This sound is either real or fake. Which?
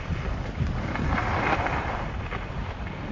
real